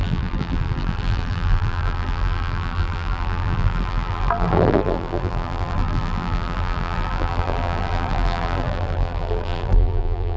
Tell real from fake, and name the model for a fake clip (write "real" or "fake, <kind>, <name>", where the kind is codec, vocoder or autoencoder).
fake, vocoder, BigVGAN v2